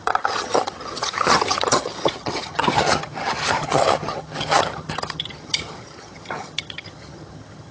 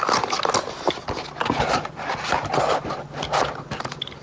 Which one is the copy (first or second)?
first